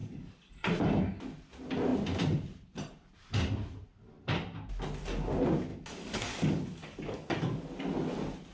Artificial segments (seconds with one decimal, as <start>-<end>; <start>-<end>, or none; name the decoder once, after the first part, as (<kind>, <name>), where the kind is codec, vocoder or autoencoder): 0.0-0.5 (codec, DAC); 5.7-7.6